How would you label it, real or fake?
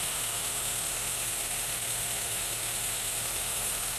fake